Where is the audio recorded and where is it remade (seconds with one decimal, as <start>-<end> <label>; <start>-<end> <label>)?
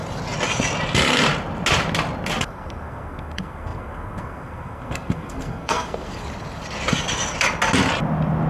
0.0-2.4 recorded; 2.4-6.1 remade; 6.1-8.5 recorded